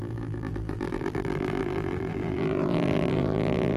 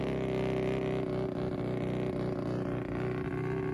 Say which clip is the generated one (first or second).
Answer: first